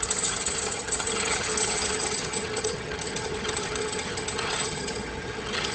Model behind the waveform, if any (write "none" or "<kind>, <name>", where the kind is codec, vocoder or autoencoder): vocoder, HiFi-GAN